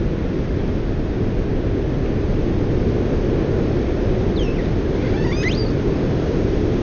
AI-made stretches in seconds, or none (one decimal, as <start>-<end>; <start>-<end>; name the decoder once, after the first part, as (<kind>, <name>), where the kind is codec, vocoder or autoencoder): none